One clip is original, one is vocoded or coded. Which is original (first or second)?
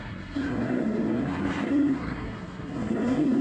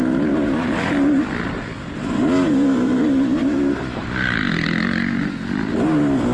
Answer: second